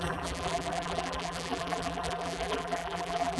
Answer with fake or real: fake